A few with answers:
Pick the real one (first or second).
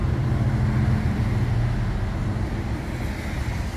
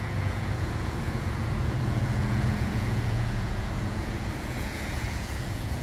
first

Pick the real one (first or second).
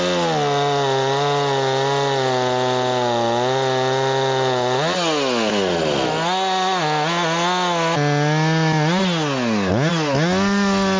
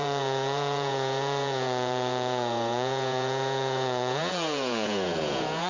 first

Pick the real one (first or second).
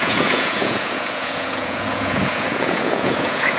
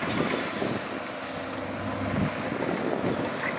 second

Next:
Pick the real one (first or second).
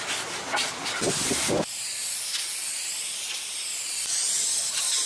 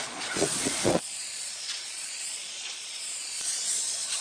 first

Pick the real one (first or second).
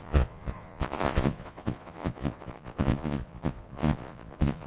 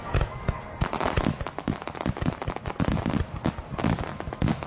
second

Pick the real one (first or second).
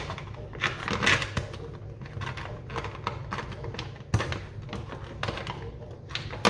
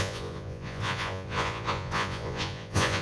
first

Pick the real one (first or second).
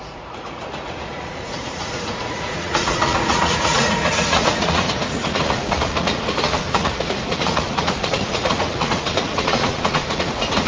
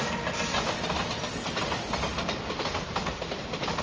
second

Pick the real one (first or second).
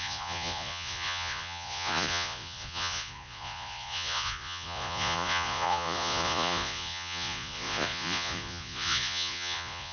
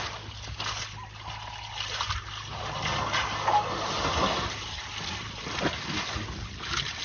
second